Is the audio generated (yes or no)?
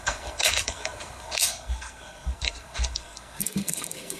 yes